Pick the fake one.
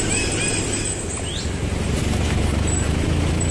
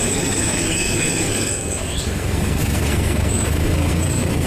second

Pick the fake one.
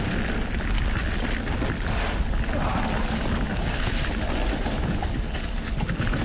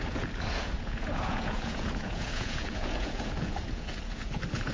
second